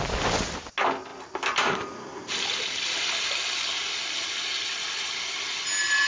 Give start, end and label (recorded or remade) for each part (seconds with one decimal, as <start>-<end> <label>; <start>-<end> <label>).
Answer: 0.0-6.1 recorded